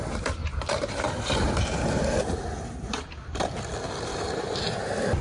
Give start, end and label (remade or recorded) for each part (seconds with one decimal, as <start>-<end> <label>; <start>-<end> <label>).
0.0-0.4 recorded; 0.4-3.5 remade; 3.5-4.1 recorded; 4.1-4.8 remade; 4.8-5.2 recorded